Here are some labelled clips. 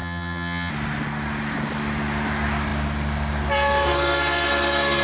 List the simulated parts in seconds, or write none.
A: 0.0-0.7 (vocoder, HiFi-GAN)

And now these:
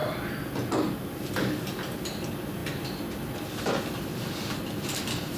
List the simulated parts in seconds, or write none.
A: none